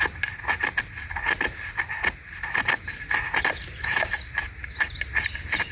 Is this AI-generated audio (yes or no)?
no